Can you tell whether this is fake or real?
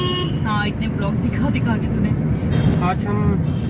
real